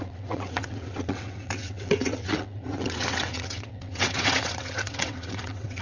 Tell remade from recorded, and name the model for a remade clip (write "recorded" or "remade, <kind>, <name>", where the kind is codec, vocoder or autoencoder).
remade, vocoder, WaveNeXt